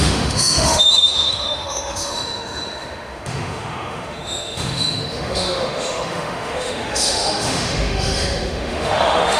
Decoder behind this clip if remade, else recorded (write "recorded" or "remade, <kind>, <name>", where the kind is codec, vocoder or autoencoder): remade, autoencoder, DAC-VAE